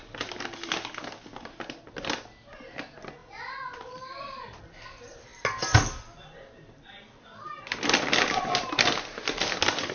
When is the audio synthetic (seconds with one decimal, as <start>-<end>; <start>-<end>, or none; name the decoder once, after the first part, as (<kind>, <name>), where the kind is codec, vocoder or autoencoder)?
none